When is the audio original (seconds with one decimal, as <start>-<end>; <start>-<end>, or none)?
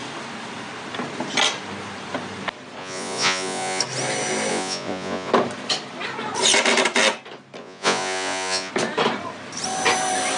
0.0-2.8; 3.8-4.5; 5.3-7.6; 8.7-10.4